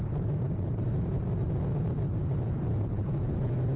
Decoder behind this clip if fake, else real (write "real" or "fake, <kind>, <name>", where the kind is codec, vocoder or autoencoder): fake, vocoder, BigVGAN v2